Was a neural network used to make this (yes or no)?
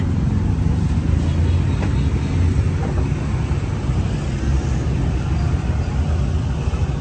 no